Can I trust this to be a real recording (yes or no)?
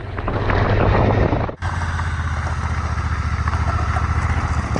yes